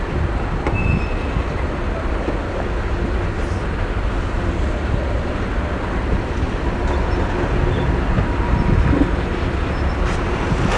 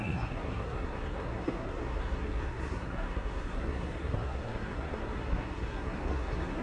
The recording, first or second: first